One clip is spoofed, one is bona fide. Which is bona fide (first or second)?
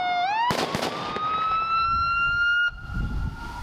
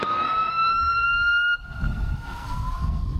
first